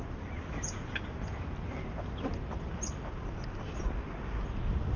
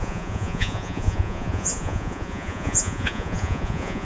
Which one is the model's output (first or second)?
second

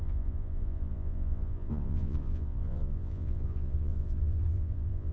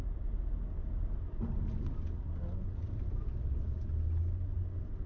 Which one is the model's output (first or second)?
first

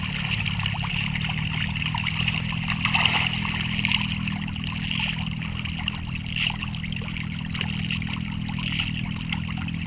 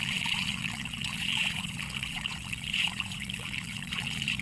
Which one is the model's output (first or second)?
second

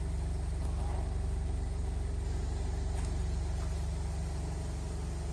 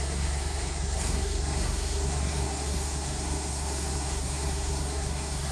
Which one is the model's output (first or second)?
second